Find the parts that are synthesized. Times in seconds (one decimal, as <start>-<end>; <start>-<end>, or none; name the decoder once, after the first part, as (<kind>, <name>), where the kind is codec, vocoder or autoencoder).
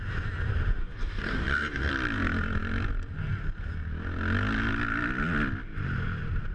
0.8-1.9 (codec, DAC)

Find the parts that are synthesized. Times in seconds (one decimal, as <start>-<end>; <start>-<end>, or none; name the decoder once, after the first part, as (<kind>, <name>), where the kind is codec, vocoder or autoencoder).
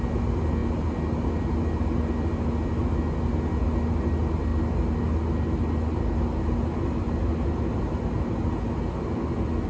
none